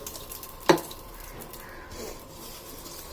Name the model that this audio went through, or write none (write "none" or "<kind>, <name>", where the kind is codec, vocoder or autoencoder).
none